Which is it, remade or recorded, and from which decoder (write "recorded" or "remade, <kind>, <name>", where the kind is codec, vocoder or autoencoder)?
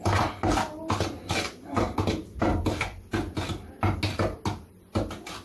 recorded